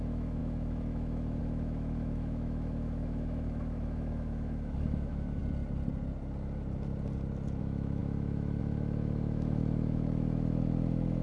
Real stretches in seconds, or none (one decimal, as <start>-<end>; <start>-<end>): 5.4-7.6